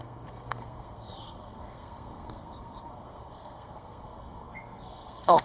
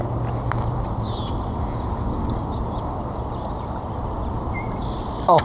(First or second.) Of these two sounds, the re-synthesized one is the first